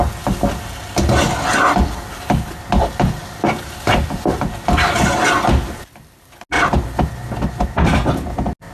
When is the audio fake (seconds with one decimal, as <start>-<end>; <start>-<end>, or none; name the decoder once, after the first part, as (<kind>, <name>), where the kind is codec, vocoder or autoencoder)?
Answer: none